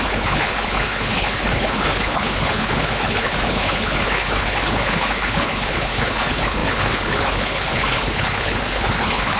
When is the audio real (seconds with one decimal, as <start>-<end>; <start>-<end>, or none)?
none